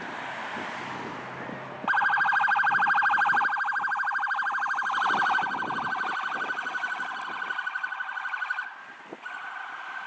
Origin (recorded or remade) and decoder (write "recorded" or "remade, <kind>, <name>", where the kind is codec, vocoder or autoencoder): recorded